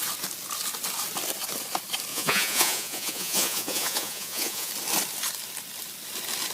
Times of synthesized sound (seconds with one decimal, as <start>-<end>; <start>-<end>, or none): 2.1-4.7